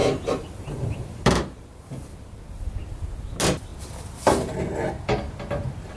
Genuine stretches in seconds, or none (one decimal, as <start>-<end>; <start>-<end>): 1.8-6.0